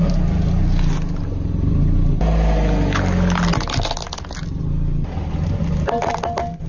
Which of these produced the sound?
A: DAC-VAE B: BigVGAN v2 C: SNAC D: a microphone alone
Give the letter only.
D